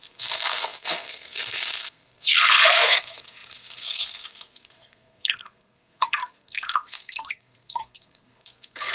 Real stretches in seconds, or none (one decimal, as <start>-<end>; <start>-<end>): none